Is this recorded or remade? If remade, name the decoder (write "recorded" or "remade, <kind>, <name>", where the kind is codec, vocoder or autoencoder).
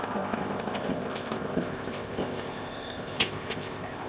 remade, codec, ZipCodec